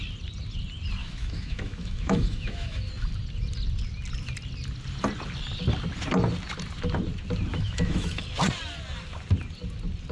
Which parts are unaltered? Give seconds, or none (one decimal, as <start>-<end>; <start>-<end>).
0.0-1.0; 2.9-7.5; 8.2-10.1